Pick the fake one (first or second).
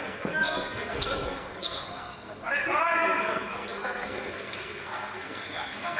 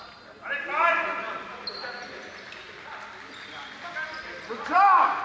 first